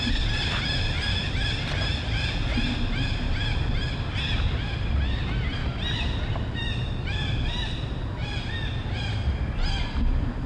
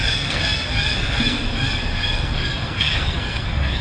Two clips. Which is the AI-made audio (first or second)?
second